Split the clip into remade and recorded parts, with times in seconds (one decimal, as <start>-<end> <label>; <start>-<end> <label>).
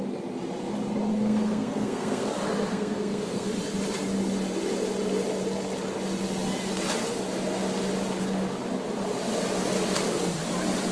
0.0-1.1 recorded; 1.1-2.3 remade; 2.3-2.7 recorded; 2.7-3.5 remade; 3.5-10.9 recorded